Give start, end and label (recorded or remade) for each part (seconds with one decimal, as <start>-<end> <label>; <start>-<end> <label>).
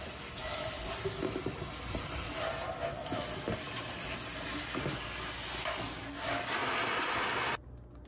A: 0.0-8.1 recorded